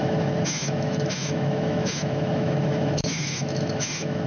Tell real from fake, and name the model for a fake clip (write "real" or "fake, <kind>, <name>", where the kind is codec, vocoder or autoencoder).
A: fake, autoencoder, DAC-VAE